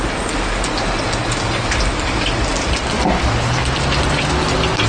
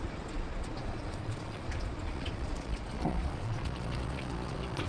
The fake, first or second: second